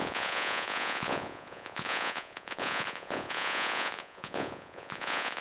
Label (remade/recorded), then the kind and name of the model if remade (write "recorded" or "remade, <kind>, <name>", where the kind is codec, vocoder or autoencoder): remade, vocoder, Vocos